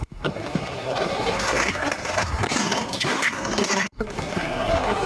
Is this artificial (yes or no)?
yes